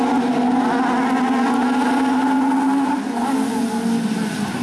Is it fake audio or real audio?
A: real